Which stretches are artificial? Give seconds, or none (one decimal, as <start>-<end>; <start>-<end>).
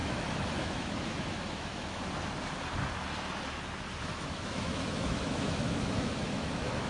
0.0-2.0; 4.0-6.9